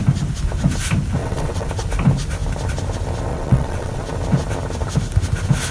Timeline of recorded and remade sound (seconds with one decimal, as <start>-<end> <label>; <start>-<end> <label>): 0.0-1.2 recorded; 1.2-1.7 remade; 1.7-3.3 recorded; 3.3-4.0 remade; 4.0-5.7 recorded